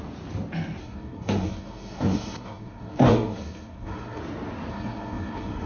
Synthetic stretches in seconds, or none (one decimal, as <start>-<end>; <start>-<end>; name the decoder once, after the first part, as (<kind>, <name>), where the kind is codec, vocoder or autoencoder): 0.8-4.2 (codec, SNAC); 4.7-5.7